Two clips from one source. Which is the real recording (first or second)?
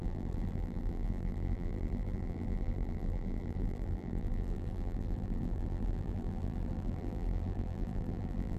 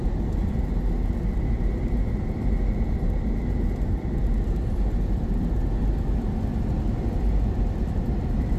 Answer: second